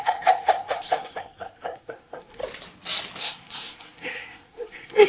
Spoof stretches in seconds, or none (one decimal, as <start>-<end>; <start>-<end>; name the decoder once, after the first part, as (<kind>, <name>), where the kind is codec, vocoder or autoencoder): 0.0-2.4 (codec, SNAC); 3.2-5.1